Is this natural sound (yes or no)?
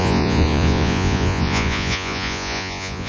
no